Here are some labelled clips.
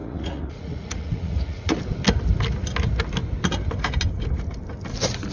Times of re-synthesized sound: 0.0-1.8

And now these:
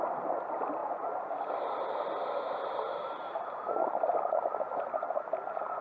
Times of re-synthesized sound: none

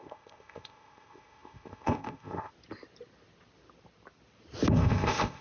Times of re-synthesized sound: 0.0-2.5; 4.7-5.4

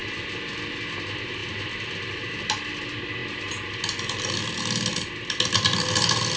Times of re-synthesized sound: 0.0-0.5; 1.4-2.8